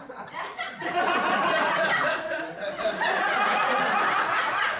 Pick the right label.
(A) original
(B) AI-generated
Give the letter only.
B